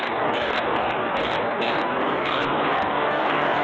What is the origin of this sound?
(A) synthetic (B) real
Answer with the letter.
A